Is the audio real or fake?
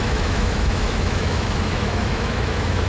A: fake